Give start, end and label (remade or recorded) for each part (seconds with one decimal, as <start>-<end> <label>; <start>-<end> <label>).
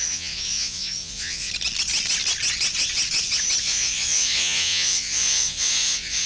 0.0-1.5 remade; 1.5-3.6 recorded; 3.6-6.3 remade